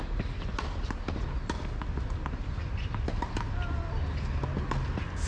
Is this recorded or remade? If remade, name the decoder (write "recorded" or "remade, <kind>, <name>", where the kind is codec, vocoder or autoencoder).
recorded